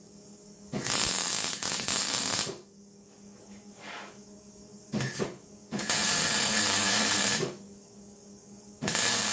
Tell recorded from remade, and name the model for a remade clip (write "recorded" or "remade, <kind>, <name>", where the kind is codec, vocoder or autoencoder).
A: remade, codec, DAC